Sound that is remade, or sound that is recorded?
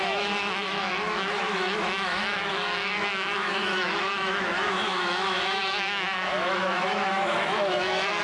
remade